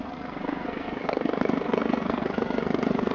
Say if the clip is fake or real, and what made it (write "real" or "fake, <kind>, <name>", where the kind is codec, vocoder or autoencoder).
fake, codec, SNAC